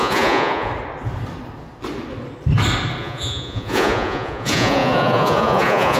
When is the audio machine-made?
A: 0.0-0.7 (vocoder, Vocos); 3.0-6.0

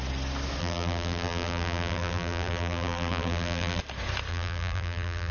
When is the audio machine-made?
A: 0.6-3.8 (vocoder, BigVGAN v2); 4.3-5.3